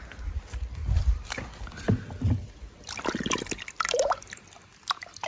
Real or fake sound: real